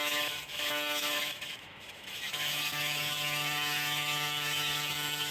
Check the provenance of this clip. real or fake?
fake